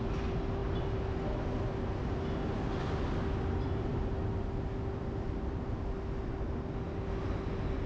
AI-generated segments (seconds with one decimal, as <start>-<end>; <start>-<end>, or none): none